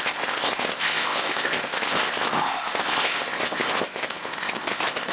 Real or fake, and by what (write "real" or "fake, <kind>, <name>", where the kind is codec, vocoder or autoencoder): fake, codec, ZipCodec